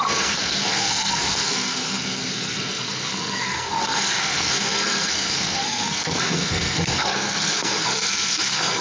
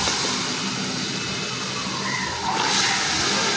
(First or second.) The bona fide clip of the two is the second